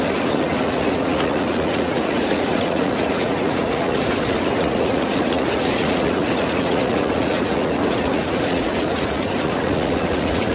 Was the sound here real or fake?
fake